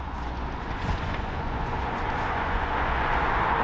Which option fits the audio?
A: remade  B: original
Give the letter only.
A